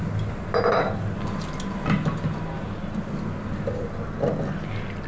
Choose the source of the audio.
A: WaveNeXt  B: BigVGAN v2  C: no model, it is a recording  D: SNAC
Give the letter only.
C